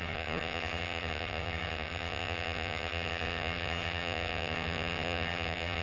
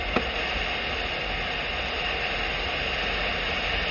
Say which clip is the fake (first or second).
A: first